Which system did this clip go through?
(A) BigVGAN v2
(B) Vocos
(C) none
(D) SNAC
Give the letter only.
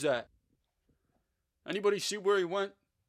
C